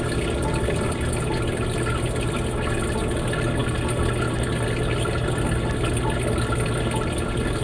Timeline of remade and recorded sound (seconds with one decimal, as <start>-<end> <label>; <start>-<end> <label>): 0.0-7.6 recorded